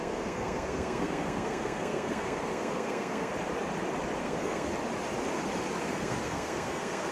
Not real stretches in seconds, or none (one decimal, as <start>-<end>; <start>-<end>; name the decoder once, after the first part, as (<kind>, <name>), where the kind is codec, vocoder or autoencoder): 0.0-3.3 (codec, SNAC); 4.2-4.7; 5.8-7.1